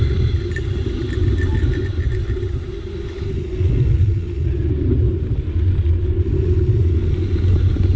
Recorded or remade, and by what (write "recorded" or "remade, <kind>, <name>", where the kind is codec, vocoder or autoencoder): recorded